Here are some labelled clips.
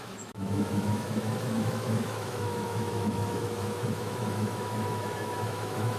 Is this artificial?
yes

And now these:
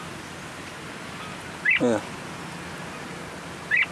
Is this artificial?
no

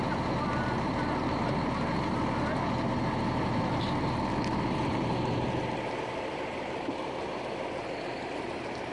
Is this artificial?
no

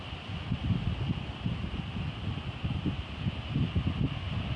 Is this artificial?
no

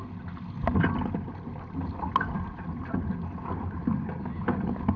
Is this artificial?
no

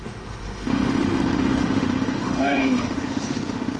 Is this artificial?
yes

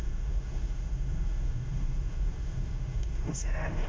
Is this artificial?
yes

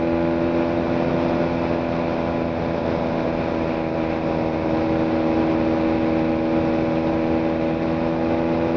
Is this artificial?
no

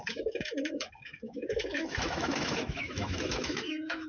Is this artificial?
yes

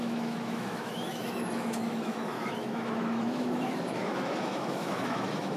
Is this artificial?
yes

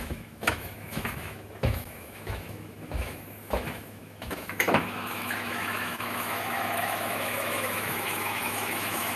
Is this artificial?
yes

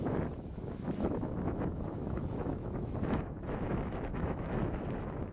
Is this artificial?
yes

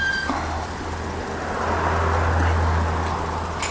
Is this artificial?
no